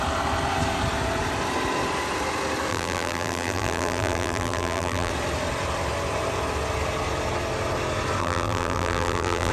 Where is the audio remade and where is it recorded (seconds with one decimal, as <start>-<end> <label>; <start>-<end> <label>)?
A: 0.0-2.7 recorded; 2.7-5.1 remade; 5.1-8.2 recorded; 8.2-9.5 remade